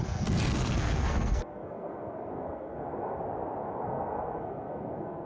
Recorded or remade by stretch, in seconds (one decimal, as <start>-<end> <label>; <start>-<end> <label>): 0.0-3.2 remade; 3.2-3.6 recorded; 3.6-5.3 remade